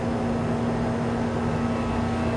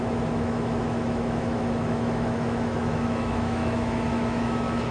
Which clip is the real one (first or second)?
first